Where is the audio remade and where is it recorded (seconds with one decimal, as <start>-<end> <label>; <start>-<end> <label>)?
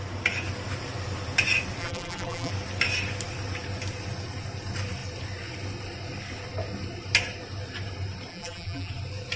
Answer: 0.0-1.8 recorded; 1.8-2.5 remade; 2.5-8.3 recorded; 8.3-8.9 remade; 8.9-9.4 recorded